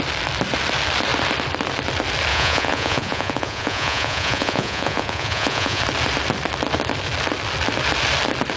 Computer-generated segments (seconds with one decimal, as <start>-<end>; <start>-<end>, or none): 2.3-5.8